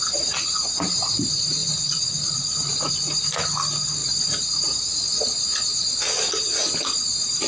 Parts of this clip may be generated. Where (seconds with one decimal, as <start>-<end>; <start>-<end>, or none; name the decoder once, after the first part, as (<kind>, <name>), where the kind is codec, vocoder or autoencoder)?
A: 1.6-2.9 (vocoder, Vocos)